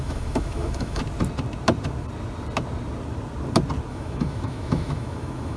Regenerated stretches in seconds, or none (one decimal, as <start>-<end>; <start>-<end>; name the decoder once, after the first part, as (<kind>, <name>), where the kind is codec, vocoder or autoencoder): 0.0-1.0 (autoencoder, DAC-VAE); 3.9-5.6